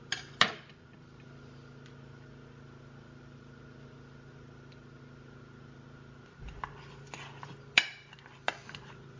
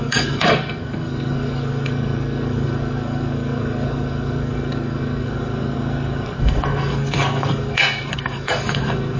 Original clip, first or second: first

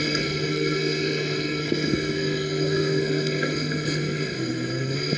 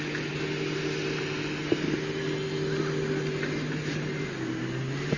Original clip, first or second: second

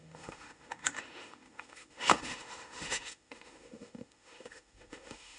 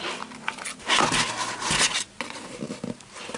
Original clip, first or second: second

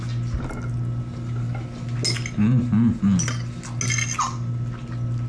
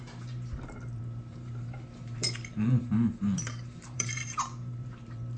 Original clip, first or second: first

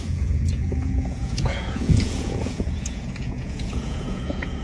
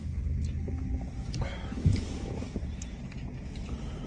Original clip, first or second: second